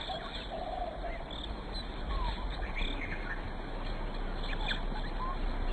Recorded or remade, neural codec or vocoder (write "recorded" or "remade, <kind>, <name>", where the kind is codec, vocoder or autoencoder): recorded